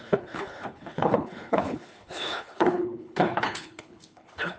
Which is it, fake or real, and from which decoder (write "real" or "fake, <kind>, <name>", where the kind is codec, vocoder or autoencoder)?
fake, codec, HILCodec